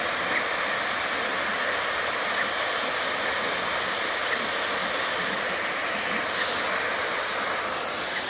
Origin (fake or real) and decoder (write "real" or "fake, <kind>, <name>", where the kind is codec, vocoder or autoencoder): real